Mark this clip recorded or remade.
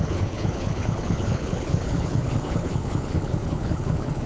remade